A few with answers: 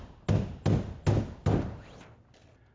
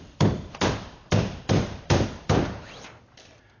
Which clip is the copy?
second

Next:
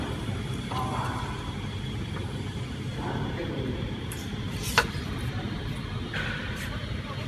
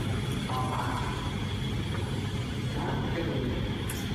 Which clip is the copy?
first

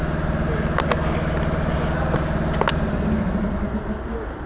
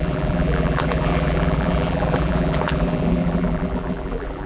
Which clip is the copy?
second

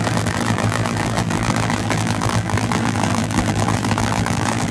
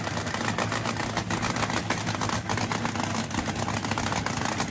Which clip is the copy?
first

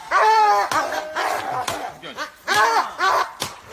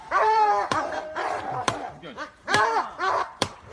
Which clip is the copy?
second